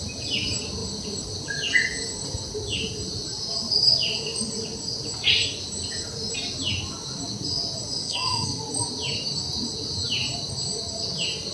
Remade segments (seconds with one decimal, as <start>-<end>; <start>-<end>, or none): 8.0-8.6